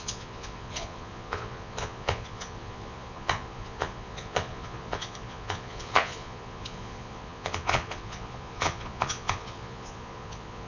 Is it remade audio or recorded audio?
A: remade